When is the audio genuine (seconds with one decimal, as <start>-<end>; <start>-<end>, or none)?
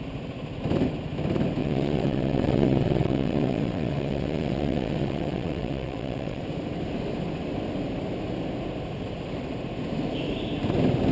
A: 0.0-1.6; 6.4-11.1